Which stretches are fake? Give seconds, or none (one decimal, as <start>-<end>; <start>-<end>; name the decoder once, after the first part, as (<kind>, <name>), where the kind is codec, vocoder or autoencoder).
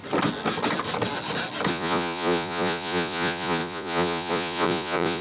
1.7-5.2 (vocoder, Vocos)